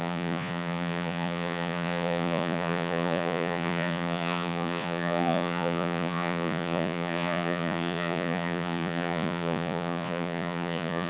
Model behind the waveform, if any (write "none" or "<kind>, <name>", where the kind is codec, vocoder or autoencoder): vocoder, Vocos